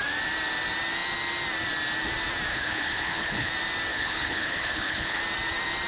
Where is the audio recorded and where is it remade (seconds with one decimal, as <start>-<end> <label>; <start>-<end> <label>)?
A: 0.0-2.5 recorded; 2.5-3.5 remade; 3.5-3.9 recorded; 3.9-5.2 remade; 5.2-5.9 recorded